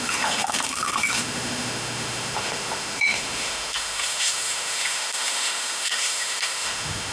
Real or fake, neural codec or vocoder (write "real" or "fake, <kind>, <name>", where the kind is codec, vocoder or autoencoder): fake, autoencoder, DAC-VAE